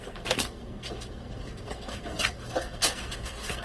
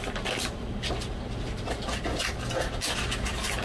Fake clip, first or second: first